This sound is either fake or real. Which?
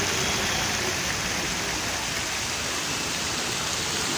real